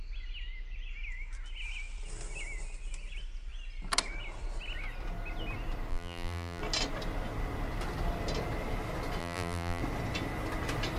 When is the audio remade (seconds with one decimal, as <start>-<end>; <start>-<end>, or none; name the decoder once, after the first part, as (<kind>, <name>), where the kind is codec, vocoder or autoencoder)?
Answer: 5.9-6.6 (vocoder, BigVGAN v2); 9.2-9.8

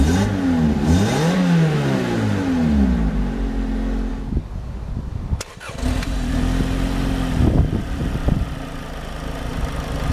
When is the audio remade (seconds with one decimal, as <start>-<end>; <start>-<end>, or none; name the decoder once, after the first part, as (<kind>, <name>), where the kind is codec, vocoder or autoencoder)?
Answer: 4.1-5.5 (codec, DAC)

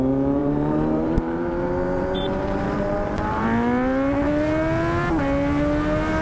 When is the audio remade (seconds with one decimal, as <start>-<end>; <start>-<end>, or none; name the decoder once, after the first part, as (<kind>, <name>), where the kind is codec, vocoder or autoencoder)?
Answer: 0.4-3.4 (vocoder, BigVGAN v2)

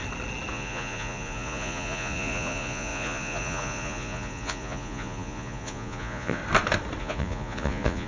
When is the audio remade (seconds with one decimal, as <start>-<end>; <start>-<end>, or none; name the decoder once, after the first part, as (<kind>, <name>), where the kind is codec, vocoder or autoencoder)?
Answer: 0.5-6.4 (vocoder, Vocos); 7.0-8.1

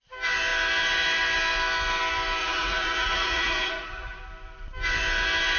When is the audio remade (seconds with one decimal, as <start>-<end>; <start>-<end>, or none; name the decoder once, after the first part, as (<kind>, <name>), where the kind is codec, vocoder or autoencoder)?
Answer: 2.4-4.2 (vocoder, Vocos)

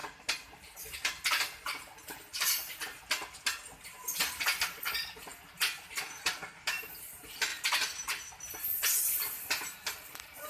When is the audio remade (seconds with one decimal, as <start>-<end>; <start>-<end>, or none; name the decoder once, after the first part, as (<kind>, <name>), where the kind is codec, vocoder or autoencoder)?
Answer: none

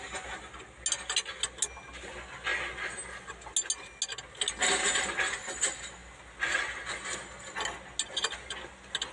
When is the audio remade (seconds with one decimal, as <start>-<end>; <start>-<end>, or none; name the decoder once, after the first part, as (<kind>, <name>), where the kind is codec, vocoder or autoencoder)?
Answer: none

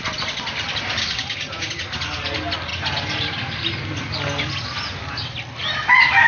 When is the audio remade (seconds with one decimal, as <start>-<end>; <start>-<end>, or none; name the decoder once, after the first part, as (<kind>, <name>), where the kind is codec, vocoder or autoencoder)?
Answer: 1.0-1.7 (codec, DAC)